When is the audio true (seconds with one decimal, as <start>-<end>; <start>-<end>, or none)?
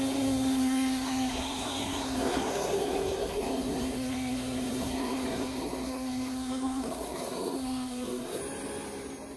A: 8.4-9.4